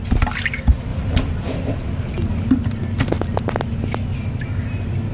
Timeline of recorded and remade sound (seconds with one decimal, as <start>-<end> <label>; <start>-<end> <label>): 0.0-0.9 recorded; 0.9-2.5 remade; 2.5-5.1 recorded

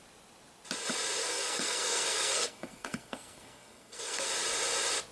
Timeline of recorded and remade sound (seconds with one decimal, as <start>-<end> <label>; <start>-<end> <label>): 0.0-1.2 recorded; 1.2-4.3 remade; 4.3-5.1 recorded

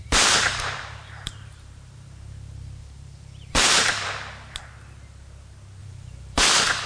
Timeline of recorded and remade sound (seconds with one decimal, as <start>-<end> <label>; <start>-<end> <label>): 0.0-4.1 remade; 4.1-5.8 recorded; 5.8-6.4 remade; 6.4-6.9 recorded

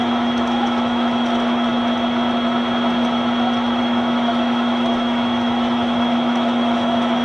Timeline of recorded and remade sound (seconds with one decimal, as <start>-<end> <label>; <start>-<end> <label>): 0.0-1.7 remade; 1.7-3.8 recorded; 3.8-7.2 remade

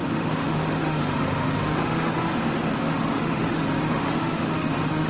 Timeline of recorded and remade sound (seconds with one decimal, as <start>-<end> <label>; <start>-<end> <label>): 0.0-2.3 remade; 2.3-2.8 recorded; 2.8-5.1 remade

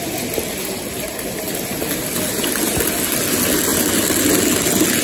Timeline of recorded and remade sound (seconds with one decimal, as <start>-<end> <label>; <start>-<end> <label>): 0.0-5.0 recorded

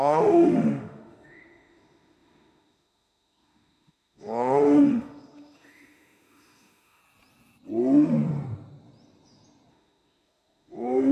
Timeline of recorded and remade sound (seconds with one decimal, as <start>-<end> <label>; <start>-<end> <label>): 0.0-7.0 remade; 7.0-9.7 recorded; 9.7-11.1 remade